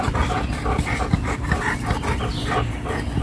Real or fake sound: real